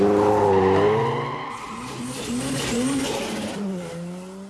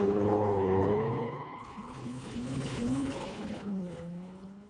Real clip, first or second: first